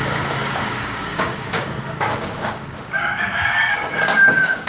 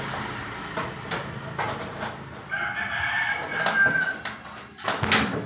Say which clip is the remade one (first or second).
first